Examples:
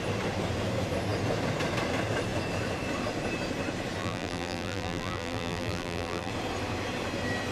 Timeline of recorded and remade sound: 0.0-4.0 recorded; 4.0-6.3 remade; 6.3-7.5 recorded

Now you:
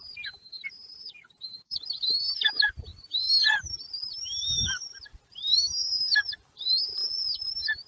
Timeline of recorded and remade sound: 0.0-2.9 remade; 2.9-3.6 recorded; 3.6-7.0 remade; 7.0-7.9 recorded

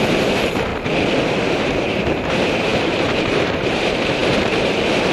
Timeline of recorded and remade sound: 0.0-0.7 remade; 0.7-1.5 recorded; 1.5-5.1 remade

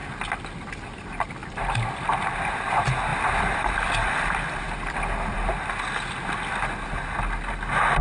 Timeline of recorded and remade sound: 0.0-3.1 recorded; 3.1-5.5 remade; 5.5-8.0 recorded

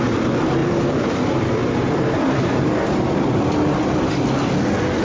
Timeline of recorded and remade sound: 0.0-0.6 recorded; 0.6-3.0 remade; 3.0-5.0 recorded